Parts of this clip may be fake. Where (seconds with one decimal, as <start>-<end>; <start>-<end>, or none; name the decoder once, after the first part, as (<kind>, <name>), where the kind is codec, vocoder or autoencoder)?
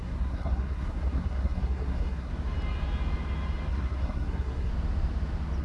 0.0-2.3 (codec, SNAC); 3.7-4.7